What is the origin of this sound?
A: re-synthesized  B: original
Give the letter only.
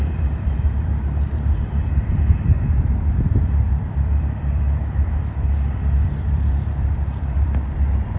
A